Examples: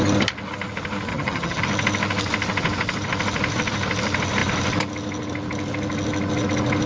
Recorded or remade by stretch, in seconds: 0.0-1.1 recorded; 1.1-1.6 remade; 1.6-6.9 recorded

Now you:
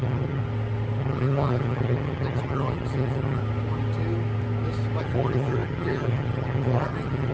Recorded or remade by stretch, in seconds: 0.0-0.4 remade; 0.4-1.0 recorded; 1.0-3.4 remade; 3.4-5.0 recorded; 5.0-7.3 remade

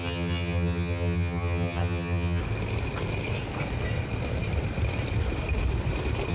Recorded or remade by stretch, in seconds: 0.0-2.4 remade; 2.4-6.3 recorded

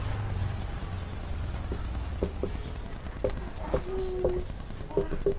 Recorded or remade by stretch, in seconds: 0.0-5.4 recorded

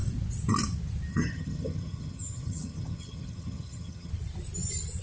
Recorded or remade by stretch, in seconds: 0.0-1.1 recorded; 1.1-4.1 remade; 4.1-5.0 recorded

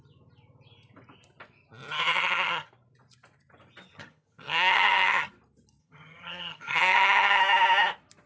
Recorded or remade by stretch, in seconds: 0.0-2.1 recorded; 2.1-2.7 remade; 2.7-3.9 recorded; 3.9-5.3 remade; 5.3-5.8 recorded; 5.8-7.4 remade; 7.4-8.3 recorded